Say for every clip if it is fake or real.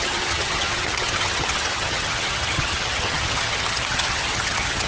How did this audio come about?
fake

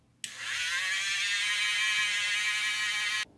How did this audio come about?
real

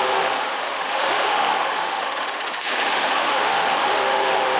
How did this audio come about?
fake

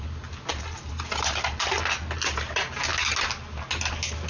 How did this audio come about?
real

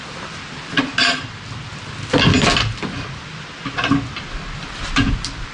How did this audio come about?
real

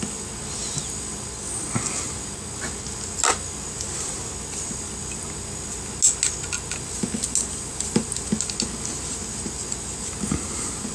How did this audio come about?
real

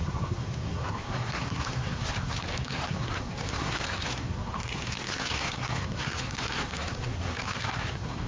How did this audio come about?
fake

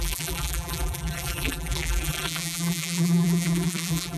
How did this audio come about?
fake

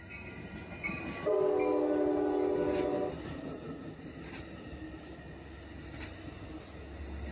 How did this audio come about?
real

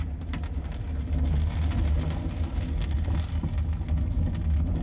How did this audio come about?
real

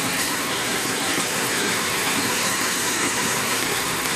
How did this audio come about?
fake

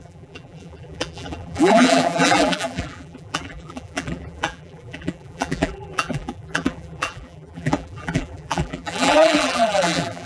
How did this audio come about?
fake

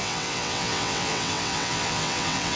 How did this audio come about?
fake